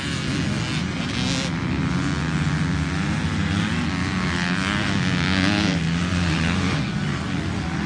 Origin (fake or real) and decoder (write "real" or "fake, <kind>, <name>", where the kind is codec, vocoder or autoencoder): real